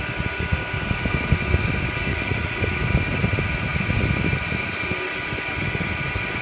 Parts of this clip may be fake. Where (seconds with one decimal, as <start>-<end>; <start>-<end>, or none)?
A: 2.1-2.6